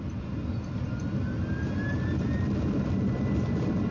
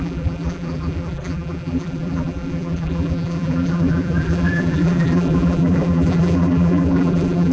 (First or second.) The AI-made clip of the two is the second